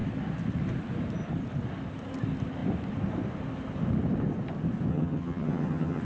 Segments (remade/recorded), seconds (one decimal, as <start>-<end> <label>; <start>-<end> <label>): 0.0-4.9 recorded; 4.9-6.0 remade